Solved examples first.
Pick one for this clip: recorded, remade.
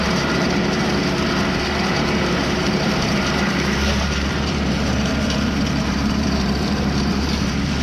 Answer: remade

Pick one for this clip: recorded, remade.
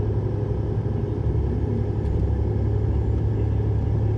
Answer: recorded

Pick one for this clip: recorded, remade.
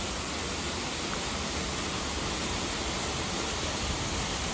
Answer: recorded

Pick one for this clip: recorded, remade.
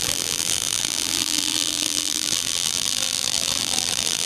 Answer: remade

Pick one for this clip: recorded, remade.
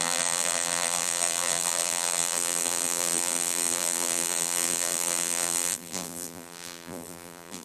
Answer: remade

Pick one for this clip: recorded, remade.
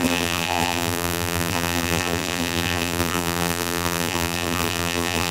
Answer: remade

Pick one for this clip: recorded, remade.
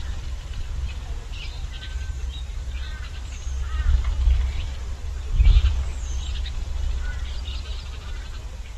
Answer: remade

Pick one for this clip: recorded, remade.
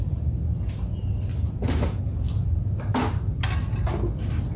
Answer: recorded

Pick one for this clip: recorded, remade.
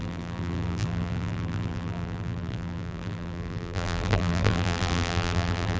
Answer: remade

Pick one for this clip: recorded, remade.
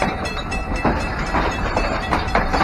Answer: remade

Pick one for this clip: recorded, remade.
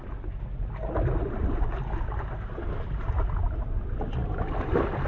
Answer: recorded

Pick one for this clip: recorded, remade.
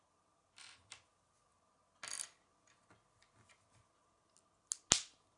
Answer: recorded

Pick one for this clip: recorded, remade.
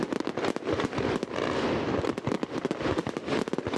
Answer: remade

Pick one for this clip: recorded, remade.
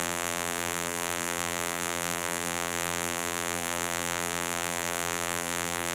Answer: remade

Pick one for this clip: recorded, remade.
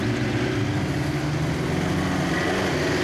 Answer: recorded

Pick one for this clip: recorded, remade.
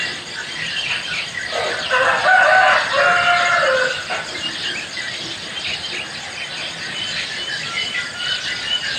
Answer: recorded